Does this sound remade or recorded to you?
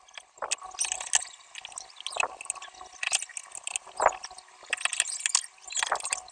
recorded